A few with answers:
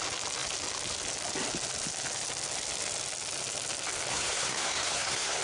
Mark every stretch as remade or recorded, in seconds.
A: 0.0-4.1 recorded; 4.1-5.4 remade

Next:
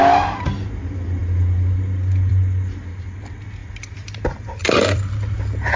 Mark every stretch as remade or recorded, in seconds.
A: 0.0-3.6 recorded; 3.6-5.8 remade

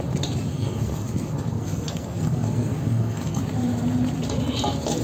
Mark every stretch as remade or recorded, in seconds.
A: 0.0-0.5 recorded; 0.5-3.4 remade; 3.4-5.0 recorded